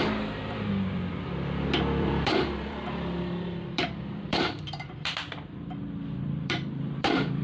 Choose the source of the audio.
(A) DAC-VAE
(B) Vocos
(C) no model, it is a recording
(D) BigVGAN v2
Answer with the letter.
D